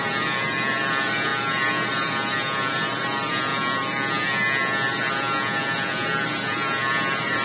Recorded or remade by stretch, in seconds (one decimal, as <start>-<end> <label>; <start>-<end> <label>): 0.0-3.5 remade; 3.5-5.6 recorded; 5.6-7.4 remade